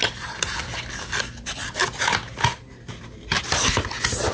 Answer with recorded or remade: recorded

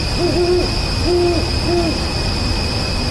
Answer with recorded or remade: recorded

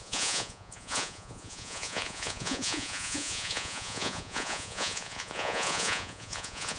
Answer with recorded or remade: remade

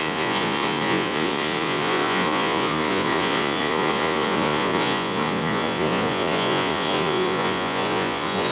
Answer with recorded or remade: remade